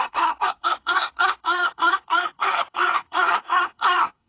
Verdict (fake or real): fake